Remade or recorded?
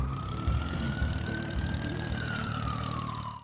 remade